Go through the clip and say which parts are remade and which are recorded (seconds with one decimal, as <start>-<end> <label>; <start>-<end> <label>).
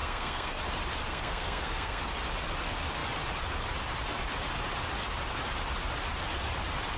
0.0-0.6 remade; 0.6-1.1 recorded; 1.1-2.1 remade; 2.1-7.0 recorded